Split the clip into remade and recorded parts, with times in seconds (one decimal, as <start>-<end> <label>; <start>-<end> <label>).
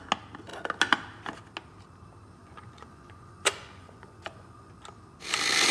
0.0-2.4 recorded; 2.4-4.7 remade; 4.7-5.7 recorded